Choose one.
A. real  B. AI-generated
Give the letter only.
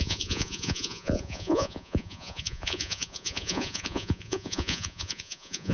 B